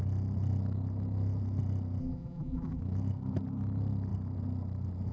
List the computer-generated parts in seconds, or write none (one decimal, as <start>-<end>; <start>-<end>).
2.0-2.8